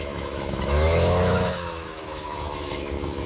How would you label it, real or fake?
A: fake